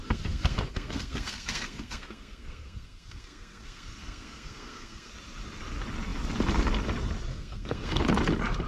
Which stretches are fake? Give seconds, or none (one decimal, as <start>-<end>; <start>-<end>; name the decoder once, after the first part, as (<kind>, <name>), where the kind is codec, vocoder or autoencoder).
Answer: 0.0-5.1 (codec, SNAC); 7.3-8.0